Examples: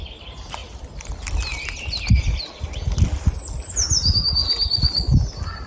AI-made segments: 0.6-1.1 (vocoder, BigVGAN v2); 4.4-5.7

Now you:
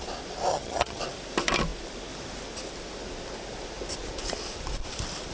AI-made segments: 0.5-1.0 (vocoder, HiFi-GAN)

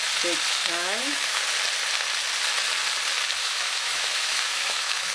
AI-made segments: 0.6-1.4 (autoencoder, DAC-VAE); 3.4-5.1

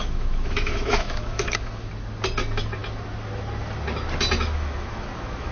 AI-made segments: 0.0-1.9 (autoencoder, DAC-VAE); 4.4-5.5

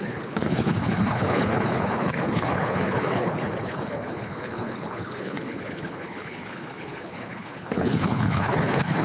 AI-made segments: 0.0-9.0 (codec, HILCodec)